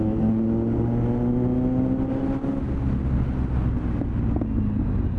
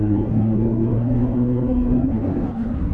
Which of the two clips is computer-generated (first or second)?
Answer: second